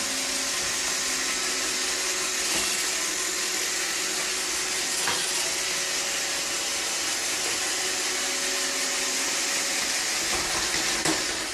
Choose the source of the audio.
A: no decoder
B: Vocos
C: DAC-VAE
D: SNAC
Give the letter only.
A